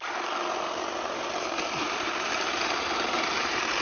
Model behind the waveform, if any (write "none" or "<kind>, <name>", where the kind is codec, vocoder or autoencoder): vocoder, BigVGAN v2